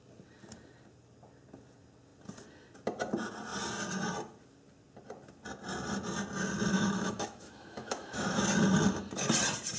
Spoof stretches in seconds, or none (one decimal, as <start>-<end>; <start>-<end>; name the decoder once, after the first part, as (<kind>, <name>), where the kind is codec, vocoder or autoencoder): 6.7-8.4 (autoencoder, DAC-VAE)